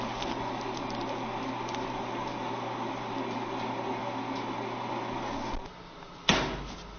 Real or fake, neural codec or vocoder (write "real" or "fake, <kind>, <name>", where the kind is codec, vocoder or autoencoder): real